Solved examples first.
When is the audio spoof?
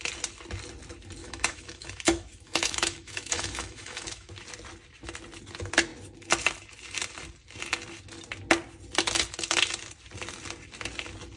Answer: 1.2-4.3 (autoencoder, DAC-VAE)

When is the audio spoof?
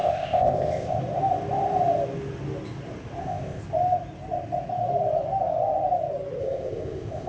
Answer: 0.0-1.0 (codec, ZipCodec); 3.2-3.6; 6.4-7.3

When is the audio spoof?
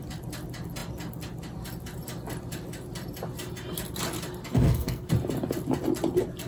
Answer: 4.4-5.1 (codec, SNAC)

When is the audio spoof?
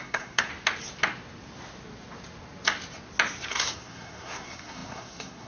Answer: 0.0-0.5 (codec, SNAC); 3.5-5.5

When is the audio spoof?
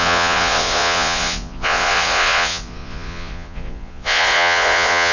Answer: 0.0-5.1 (vocoder, Vocos)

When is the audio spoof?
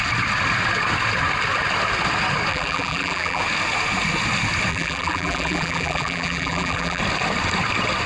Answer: 2.5-3.4 (vocoder, BigVGAN v2); 4.7-7.0